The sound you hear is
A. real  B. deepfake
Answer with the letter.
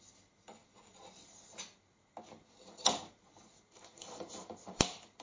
A